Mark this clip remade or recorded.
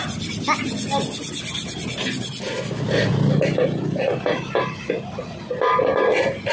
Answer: recorded